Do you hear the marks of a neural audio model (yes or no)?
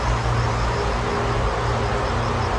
no